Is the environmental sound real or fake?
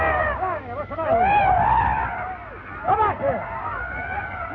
real